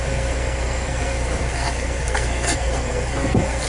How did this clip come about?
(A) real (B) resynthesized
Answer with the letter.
B